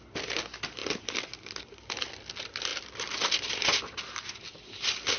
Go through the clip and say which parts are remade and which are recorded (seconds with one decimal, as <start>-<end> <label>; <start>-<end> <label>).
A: 0.0-5.2 recorded